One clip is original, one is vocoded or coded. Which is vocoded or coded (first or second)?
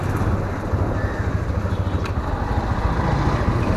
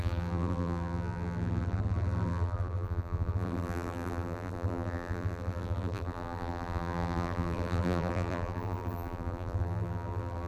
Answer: second